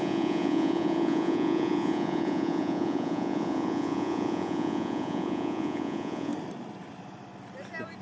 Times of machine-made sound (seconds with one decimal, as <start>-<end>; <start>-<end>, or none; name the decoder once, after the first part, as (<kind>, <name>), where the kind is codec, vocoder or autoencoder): 0.0-6.3 (vocoder, Vocos)